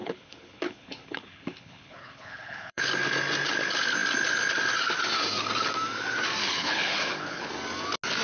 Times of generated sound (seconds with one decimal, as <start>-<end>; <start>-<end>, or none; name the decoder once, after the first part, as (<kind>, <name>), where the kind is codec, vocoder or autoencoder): 0.0-2.9 (codec, HILCodec); 6.4-7.5